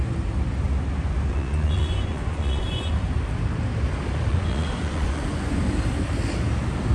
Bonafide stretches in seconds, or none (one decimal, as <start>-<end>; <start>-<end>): 0.0-1.3; 2.9-4.3; 5.6-6.9